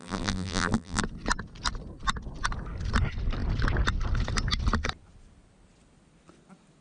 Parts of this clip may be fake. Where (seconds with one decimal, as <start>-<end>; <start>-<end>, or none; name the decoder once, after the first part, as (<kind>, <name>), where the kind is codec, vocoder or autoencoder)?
0.0-1.0 (vocoder, BigVGAN v2)